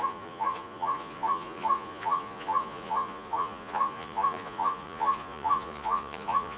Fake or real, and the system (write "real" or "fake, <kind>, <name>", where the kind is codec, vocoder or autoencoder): fake, vocoder, Vocos